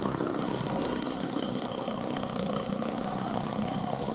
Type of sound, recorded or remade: remade